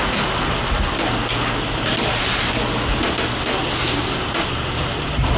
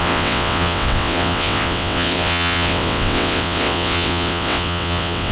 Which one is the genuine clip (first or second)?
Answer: first